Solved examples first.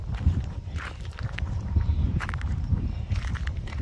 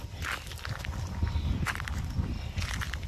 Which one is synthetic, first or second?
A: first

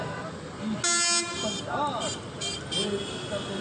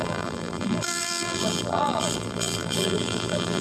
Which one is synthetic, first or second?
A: second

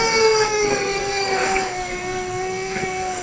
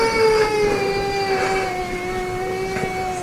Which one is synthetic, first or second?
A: first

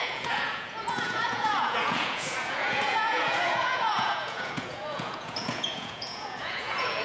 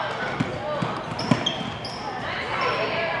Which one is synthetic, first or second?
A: first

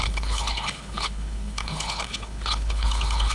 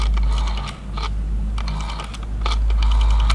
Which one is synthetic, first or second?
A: first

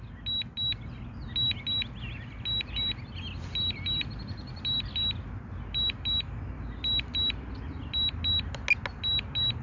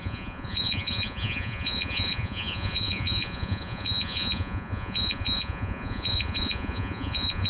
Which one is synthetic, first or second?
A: second